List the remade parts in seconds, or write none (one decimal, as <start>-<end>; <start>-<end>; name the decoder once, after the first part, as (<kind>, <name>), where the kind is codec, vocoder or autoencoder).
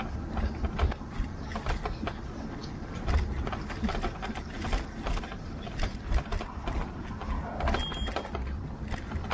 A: none